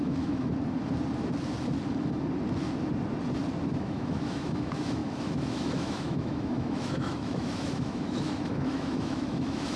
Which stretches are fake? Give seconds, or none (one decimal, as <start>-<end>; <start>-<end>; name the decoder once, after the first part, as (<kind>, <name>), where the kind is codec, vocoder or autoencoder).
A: 0.0-0.5 (autoencoder, DAC-VAE); 3.7-9.8